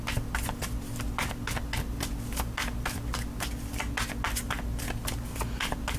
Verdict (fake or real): real